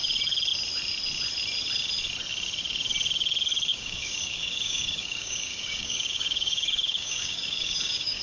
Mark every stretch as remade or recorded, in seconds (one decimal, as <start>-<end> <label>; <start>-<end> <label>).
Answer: 0.0-3.7 recorded; 3.7-8.2 remade